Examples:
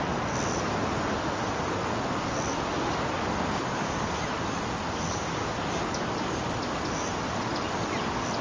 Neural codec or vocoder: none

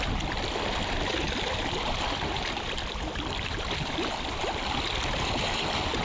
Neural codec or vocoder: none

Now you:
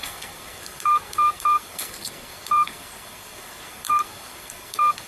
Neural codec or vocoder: codec, SNAC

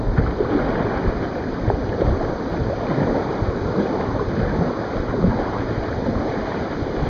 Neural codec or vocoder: none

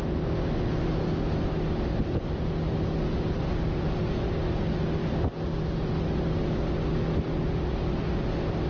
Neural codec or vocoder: none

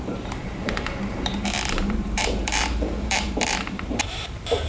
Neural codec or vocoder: vocoder, BigVGAN v2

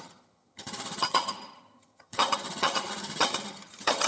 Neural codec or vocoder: vocoder, HiFi-GAN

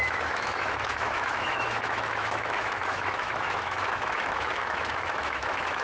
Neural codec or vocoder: autoencoder, DAC-VAE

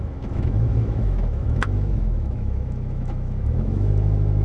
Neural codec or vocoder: autoencoder, DAC-VAE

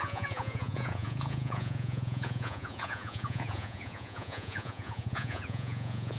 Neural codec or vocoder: vocoder, Vocos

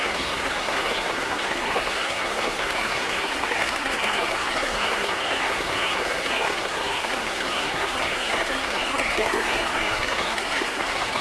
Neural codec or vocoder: codec, SNAC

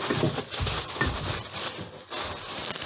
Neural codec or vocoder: none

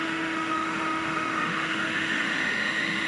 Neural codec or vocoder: autoencoder, DAC-VAE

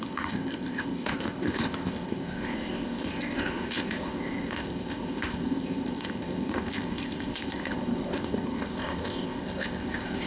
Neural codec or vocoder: codec, ZipCodec